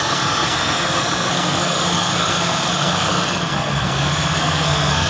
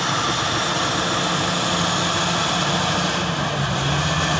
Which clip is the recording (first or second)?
second